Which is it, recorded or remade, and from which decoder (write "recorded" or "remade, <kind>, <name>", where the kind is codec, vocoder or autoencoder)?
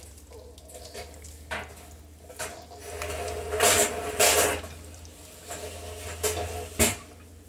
recorded